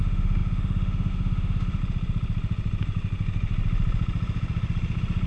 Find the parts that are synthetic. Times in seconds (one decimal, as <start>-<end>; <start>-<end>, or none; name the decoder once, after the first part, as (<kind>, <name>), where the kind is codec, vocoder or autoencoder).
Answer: 0.0-1.8 (autoencoder, DAC-VAE)